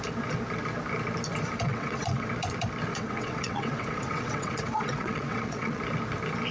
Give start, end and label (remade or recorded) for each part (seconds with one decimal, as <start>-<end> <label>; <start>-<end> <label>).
0.0-1.7 recorded; 1.7-2.3 remade; 2.3-2.9 recorded; 2.9-5.8 remade; 5.8-6.5 recorded